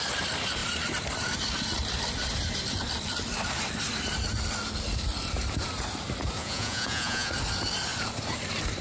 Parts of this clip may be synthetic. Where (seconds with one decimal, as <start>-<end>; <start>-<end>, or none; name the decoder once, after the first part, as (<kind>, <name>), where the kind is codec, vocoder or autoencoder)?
6.4-7.3 (vocoder, Vocos)